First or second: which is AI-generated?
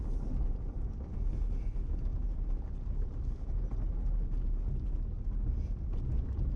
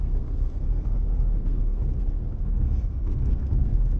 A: second